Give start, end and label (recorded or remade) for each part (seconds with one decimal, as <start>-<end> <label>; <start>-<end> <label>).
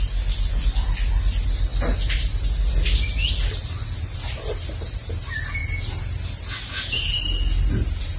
0.0-8.2 recorded